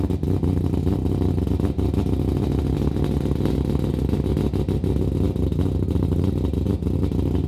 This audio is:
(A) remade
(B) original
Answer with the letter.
B